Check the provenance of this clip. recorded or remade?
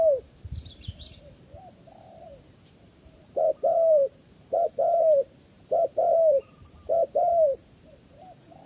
remade